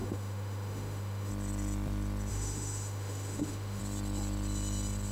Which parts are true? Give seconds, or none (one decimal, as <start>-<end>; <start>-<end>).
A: 1.3-2.3; 3.8-5.1